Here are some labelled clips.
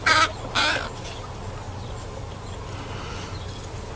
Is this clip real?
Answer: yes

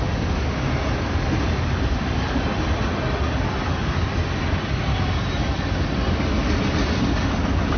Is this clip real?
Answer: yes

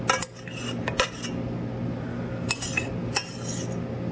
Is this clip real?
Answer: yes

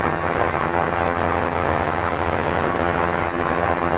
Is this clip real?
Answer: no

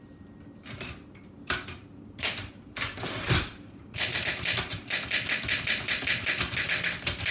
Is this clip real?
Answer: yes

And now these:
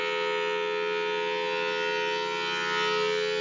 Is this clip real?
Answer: yes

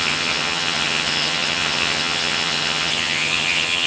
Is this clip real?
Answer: no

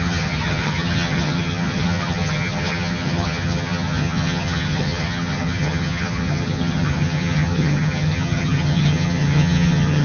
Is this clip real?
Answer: no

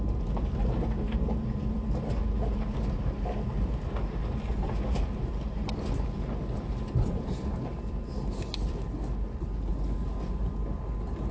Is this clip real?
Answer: yes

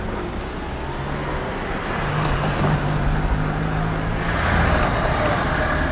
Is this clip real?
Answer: yes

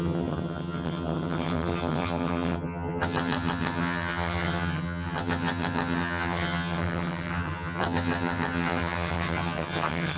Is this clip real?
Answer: no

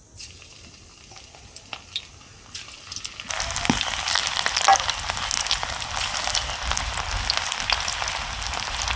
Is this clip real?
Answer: yes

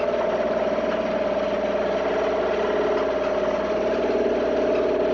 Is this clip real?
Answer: yes